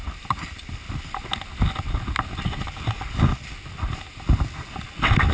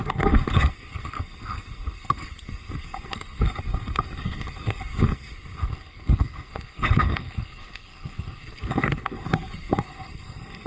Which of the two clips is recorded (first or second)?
first